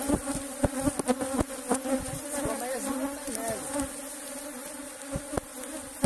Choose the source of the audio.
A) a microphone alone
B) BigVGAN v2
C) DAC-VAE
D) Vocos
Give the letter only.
A